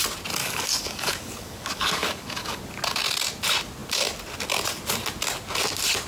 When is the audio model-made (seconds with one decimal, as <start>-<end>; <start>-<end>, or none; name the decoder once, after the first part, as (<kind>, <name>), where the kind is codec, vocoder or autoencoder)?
0.4-2.6 (codec, DAC)